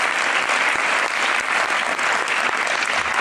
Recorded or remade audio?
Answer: recorded